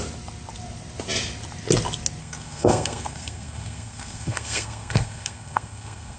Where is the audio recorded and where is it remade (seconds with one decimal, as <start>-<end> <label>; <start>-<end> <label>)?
0.0-2.2 recorded; 2.2-6.2 remade